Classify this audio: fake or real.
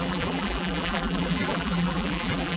fake